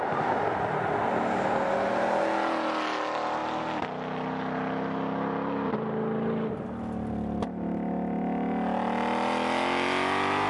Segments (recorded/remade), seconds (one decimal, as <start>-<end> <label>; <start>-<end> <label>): 0.0-10.5 recorded

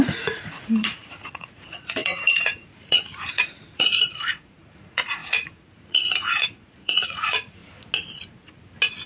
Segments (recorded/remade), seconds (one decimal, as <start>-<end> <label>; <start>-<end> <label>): 0.0-7.6 remade; 7.6-9.1 recorded

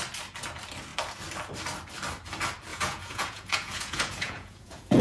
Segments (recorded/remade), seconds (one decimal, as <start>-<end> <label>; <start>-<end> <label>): 0.0-2.7 recorded; 2.7-5.0 remade

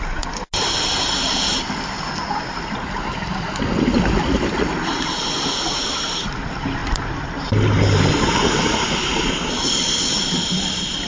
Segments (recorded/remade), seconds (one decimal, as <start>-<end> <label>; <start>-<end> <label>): 0.0-11.1 recorded

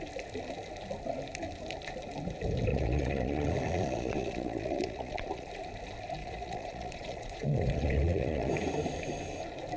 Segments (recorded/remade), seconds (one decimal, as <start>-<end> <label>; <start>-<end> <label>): 0.0-2.7 recorded; 2.7-5.5 remade; 5.5-6.2 recorded; 6.2-8.5 remade; 8.5-9.8 recorded

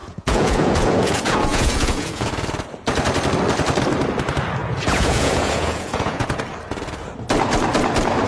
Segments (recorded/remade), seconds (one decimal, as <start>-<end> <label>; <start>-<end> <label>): 0.0-2.3 remade; 2.3-4.6 recorded; 4.6-6.4 remade; 6.4-8.3 recorded

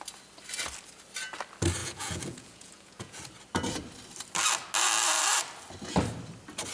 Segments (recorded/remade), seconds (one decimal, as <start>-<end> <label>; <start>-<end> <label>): 0.0-1.8 recorded; 1.8-3.2 remade; 3.2-6.7 recorded

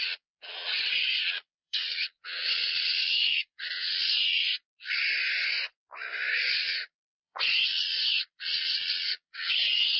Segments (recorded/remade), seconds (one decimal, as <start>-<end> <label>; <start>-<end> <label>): 0.0-4.6 remade; 4.6-6.4 recorded; 6.4-10.0 remade